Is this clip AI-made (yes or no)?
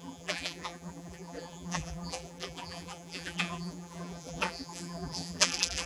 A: yes